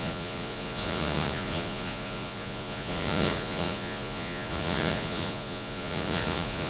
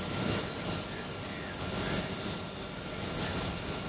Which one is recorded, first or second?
second